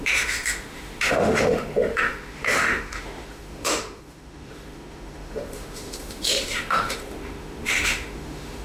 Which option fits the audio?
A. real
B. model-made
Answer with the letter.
B